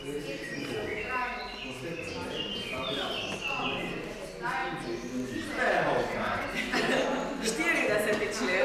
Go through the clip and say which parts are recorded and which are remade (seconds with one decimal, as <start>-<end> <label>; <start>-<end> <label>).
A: 0.0-8.6 recorded

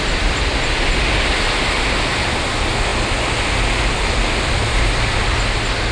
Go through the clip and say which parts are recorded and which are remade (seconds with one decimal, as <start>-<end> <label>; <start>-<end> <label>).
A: 0.0-5.9 recorded

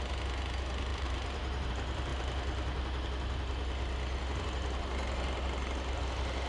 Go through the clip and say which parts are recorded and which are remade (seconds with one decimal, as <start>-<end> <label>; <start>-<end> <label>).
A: 0.0-0.9 recorded; 0.9-1.7 remade; 1.7-6.5 recorded

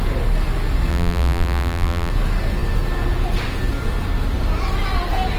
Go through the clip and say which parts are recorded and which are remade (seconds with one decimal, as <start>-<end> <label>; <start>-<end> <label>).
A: 0.0-0.9 recorded; 0.9-2.1 remade; 2.1-5.4 recorded

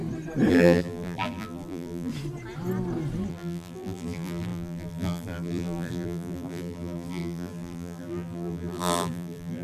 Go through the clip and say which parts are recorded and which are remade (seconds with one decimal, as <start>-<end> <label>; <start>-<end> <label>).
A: 0.0-0.5 recorded; 0.5-2.1 remade; 2.1-3.3 recorded; 3.3-9.6 remade

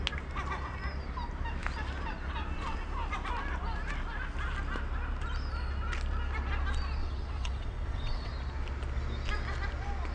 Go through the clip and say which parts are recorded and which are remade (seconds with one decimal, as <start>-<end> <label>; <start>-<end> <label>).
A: 0.0-7.0 recorded; 7.0-8.3 remade; 8.3-10.1 recorded

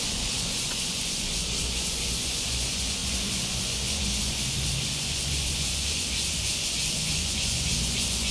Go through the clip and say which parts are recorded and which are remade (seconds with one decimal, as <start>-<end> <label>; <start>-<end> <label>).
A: 0.0-8.3 remade